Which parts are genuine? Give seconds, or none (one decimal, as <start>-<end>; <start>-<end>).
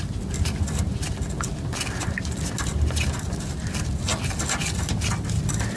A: 0.0-5.8